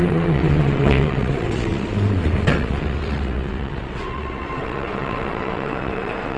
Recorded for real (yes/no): no